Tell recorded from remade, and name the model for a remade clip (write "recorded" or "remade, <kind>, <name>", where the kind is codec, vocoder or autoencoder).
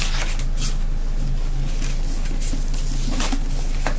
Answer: recorded